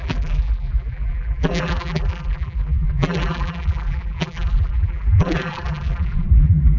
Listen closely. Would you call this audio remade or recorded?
remade